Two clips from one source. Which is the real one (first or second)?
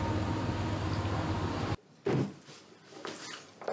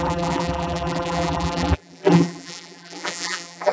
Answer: first